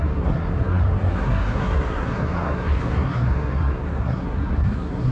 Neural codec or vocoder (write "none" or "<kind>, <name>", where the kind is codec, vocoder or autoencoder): codec, SNAC